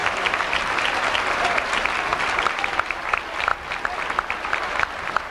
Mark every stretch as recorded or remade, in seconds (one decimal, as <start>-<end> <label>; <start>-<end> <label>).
0.0-2.1 remade; 2.1-2.6 recorded; 2.6-3.5 remade; 3.5-4.7 recorded; 4.7-5.3 remade